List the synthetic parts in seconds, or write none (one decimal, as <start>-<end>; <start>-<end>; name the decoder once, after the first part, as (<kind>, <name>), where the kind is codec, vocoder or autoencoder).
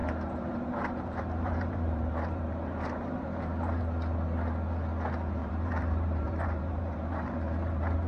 0.0-3.8 (vocoder, BigVGAN v2); 5.4-8.1